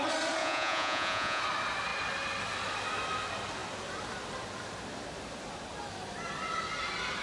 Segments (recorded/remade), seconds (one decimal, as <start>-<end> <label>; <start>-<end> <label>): 0.0-0.4 recorded; 0.4-1.4 remade; 1.4-7.2 recorded